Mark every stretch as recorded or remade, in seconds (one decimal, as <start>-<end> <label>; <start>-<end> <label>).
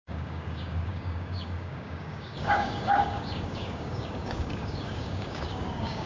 0.0-6.1 remade